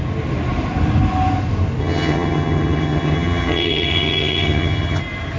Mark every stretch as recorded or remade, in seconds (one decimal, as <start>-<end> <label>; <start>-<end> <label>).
0.0-1.8 recorded; 1.8-5.0 remade; 5.0-5.4 recorded